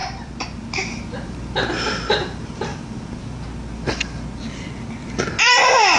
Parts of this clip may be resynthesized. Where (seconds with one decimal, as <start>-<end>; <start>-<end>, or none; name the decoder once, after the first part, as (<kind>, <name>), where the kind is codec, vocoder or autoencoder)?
0.0-2.7 (vocoder, BigVGAN v2)